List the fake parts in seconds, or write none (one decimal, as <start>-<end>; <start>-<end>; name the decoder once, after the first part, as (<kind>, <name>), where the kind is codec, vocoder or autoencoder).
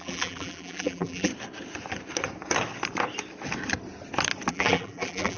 0.0-1.3 (vocoder, BigVGAN v2); 4.5-5.4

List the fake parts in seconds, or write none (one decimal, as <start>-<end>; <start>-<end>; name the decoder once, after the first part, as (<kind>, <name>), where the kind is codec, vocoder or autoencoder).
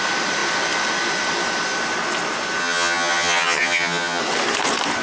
2.6-4.2 (vocoder, HiFi-GAN)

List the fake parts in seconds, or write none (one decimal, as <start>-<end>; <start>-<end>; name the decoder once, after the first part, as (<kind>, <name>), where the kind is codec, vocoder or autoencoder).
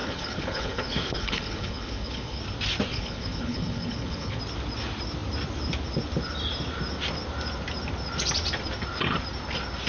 0.0-2.4 (codec, HILCodec); 2.9-4.4